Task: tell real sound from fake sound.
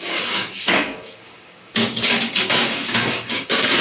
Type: fake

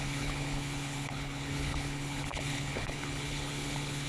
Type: fake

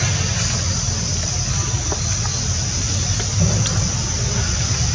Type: real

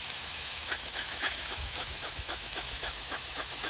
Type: fake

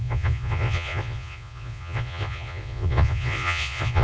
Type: fake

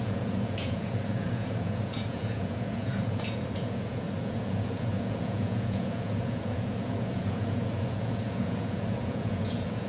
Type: fake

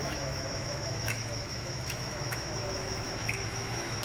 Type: fake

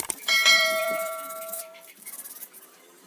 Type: fake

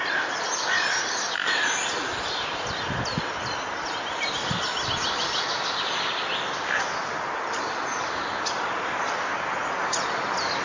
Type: real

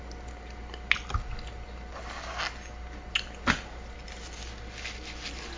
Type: real